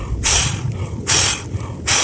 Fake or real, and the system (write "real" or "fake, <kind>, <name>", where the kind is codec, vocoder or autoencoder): real